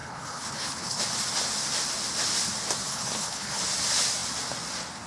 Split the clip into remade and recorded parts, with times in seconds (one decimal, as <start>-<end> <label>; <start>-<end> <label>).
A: 0.0-1.0 remade; 1.0-2.9 recorded; 2.9-3.6 remade; 3.6-5.1 recorded